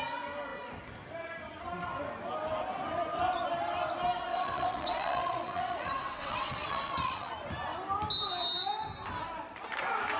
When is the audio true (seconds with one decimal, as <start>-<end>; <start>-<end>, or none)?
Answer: 0.0-4.3; 7.3-10.2